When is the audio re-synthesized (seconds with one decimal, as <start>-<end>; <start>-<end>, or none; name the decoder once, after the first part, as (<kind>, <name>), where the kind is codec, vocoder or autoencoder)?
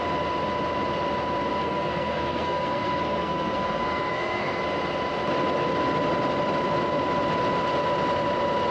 1.5-4.6 (codec, SNAC)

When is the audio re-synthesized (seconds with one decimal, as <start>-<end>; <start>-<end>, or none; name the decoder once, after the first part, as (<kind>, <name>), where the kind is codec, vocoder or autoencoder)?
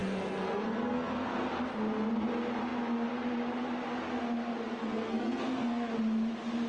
0.0-1.5 (codec, SNAC); 4.8-5.9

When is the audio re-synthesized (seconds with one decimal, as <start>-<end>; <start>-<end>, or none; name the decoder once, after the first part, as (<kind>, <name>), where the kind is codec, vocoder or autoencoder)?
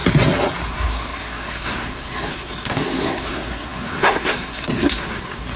0.7-5.6 (codec, SNAC)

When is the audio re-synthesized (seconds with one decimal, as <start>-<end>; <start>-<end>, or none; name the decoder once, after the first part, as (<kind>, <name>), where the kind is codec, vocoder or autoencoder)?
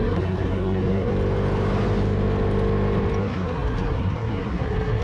0.0-1.1 (codec, SNAC); 3.2-5.0